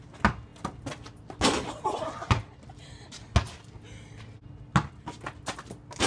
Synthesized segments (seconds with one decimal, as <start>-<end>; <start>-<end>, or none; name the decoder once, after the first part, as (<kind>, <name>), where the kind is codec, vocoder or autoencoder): none